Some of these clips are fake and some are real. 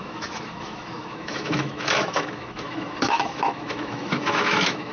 fake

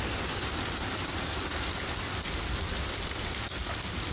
real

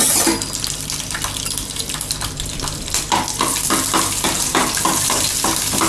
real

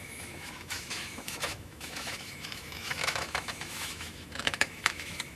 fake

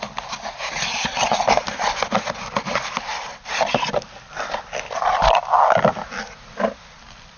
real